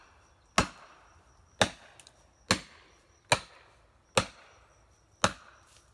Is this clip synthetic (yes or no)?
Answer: no